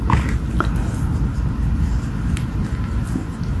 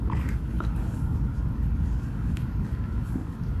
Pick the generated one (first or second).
second